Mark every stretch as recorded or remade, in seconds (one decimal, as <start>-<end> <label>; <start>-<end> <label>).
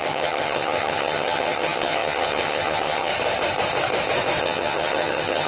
0.0-3.1 remade; 3.1-4.4 recorded; 4.4-5.5 remade